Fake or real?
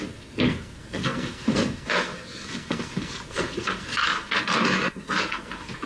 fake